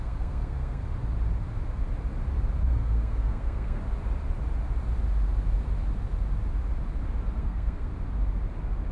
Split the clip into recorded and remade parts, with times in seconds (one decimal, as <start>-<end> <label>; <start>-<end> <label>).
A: 0.0-0.8 remade; 0.8-2.6 recorded; 2.6-3.8 remade; 3.8-7.4 recorded; 7.4-7.9 remade; 7.9-8.9 recorded